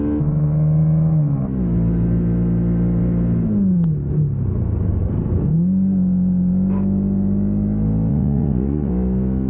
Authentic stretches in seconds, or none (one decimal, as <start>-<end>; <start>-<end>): 0.0-8.1; 8.9-9.5